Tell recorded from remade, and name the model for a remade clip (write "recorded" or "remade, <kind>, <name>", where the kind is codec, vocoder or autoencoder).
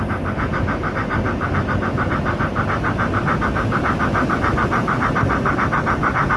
recorded